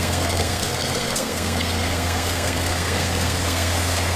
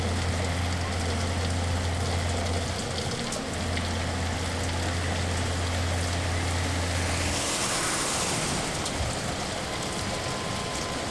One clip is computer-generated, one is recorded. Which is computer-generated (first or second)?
first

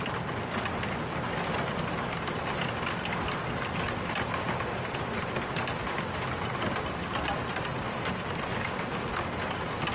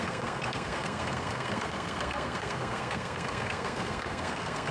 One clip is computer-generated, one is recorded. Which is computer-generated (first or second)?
second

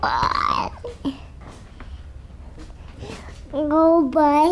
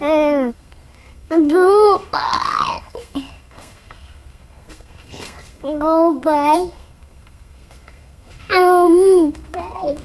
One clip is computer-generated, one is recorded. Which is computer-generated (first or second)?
second